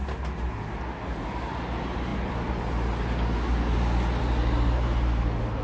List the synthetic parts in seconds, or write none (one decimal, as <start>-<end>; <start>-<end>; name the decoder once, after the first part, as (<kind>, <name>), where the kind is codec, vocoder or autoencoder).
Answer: none